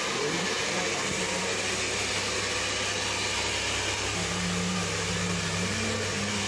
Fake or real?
real